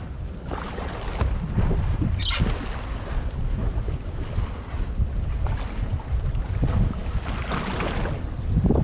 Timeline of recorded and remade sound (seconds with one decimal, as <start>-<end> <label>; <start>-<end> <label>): 0.0-8.8 recorded